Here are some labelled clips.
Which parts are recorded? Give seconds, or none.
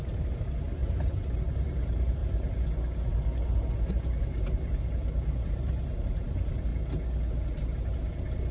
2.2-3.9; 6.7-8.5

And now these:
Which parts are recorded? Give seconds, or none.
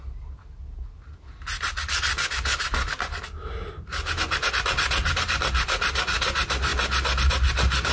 0.0-3.6; 4.5-7.9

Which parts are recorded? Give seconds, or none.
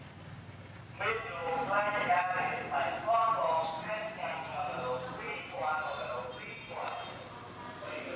0.0-1.4; 6.3-8.2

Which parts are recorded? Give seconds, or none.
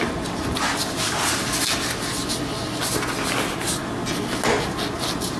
1.6-5.4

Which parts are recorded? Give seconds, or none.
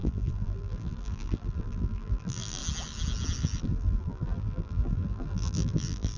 2.6-3.6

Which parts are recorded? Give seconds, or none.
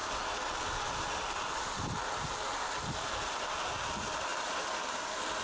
0.0-4.3; 4.8-5.4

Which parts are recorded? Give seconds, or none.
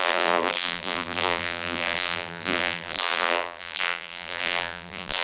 none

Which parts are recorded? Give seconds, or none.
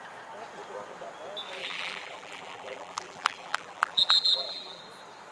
0.0-1.6; 4.8-5.3